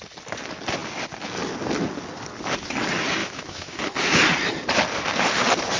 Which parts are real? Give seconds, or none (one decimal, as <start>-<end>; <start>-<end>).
0.0-3.2; 3.8-5.8